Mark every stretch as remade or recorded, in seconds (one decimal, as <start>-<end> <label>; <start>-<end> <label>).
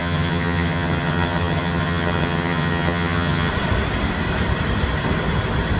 0.0-3.5 remade; 3.5-5.8 recorded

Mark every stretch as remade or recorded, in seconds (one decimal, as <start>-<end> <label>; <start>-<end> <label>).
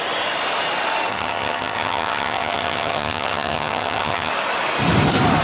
0.0-1.1 recorded; 1.1-4.3 remade; 4.3-5.4 recorded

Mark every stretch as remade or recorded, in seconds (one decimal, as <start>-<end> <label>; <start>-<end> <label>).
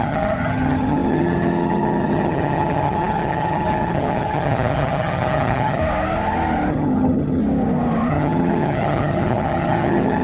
0.0-5.8 remade; 5.8-6.7 recorded; 6.7-7.4 remade; 7.4-8.1 recorded; 8.1-10.2 remade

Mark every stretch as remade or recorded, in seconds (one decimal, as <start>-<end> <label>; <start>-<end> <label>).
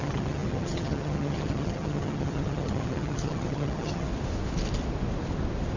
0.0-4.1 remade; 4.1-5.8 recorded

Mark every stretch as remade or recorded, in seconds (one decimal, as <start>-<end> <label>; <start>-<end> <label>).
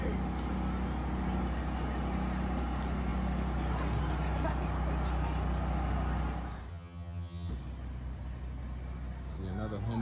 0.0-6.7 recorded; 6.7-7.5 remade; 7.5-10.0 recorded